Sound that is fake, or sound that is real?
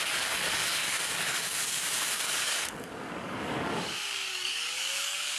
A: fake